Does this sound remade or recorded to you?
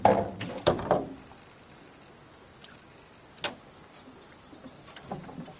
recorded